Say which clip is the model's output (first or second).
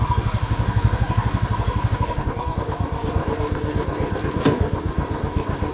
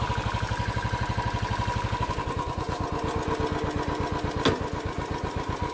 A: first